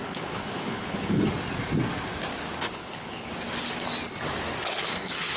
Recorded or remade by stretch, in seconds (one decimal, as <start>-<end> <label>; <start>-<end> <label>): 0.0-1.3 remade; 1.3-2.6 recorded; 2.6-3.3 remade; 3.3-4.6 recorded; 4.6-5.4 remade